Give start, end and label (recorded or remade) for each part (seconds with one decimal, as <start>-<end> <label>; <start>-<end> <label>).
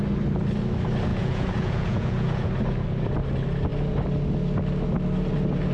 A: 0.0-1.1 recorded; 1.1-2.5 remade; 2.5-5.7 recorded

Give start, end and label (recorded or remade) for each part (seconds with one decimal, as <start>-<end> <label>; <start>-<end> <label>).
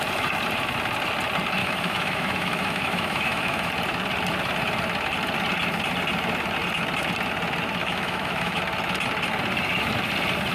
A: 0.0-1.6 recorded; 1.6-3.7 remade; 3.7-7.8 recorded; 7.8-8.6 remade; 8.6-10.5 recorded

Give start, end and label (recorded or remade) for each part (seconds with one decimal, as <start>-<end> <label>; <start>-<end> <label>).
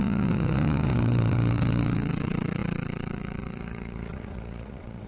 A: 0.0-5.1 remade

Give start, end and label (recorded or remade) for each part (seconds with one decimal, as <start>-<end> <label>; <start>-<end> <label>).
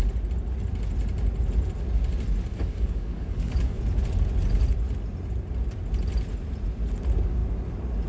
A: 0.0-2.5 recorded; 2.5-3.8 remade; 3.8-8.1 recorded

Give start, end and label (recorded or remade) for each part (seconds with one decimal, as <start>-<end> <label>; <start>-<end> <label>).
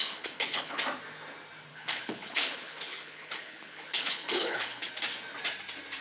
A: 0.0-0.8 remade; 0.8-1.7 recorded; 1.7-4.9 remade; 4.9-6.0 recorded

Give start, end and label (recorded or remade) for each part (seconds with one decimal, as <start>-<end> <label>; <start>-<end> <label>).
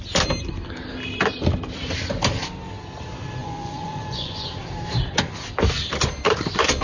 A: 0.0-3.4 recorded; 3.4-4.5 remade; 4.5-6.8 recorded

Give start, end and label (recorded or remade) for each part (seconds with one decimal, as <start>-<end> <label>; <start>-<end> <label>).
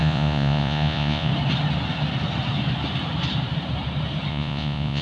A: 0.0-1.3 remade; 1.3-4.3 recorded; 4.3-5.0 remade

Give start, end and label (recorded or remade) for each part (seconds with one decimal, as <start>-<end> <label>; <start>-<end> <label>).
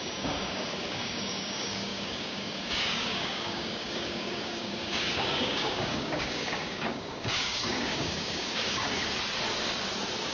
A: 0.0-9.0 remade; 9.0-10.3 recorded